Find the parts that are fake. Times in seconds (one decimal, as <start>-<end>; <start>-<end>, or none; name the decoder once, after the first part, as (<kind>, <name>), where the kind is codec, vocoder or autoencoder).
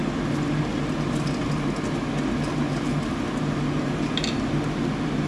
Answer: none